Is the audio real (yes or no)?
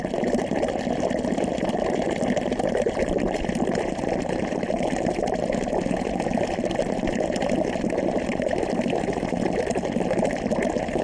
yes